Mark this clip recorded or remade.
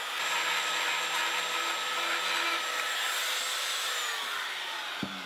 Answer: recorded